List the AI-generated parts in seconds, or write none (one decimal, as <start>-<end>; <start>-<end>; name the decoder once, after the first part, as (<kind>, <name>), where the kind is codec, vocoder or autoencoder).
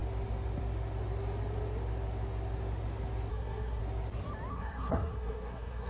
3.3-3.8 (codec, SNAC); 4.5-5.9